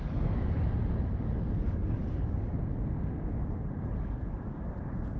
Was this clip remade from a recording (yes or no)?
no